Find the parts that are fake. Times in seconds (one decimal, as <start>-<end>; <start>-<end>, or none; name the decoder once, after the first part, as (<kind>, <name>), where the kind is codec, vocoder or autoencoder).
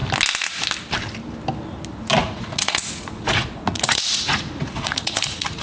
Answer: 2.2-5.6 (vocoder, Vocos)